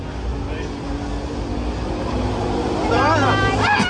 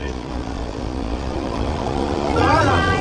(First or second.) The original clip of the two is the first